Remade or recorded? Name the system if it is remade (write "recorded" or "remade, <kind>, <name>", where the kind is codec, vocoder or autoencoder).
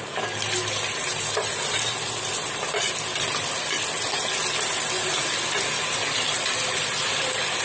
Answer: recorded